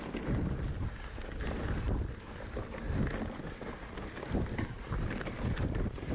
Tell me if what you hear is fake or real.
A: fake